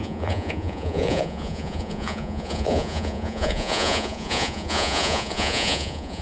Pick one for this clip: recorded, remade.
remade